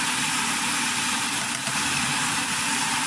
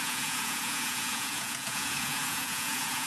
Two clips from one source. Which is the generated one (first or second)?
second